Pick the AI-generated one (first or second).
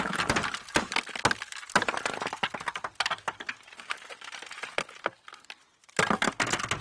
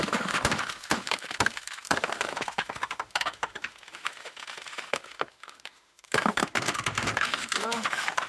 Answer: second